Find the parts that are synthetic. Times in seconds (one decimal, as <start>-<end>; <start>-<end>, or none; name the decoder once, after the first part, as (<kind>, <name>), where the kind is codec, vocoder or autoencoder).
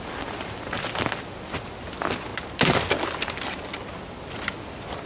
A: none